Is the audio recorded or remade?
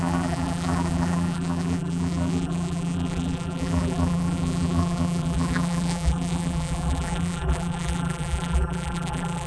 remade